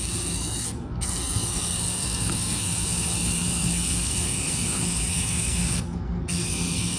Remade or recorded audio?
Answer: remade